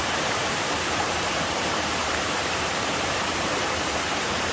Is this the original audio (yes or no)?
no